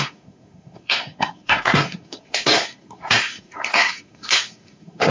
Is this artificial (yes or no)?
yes